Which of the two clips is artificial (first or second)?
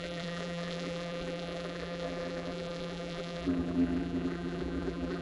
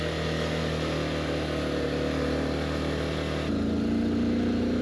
first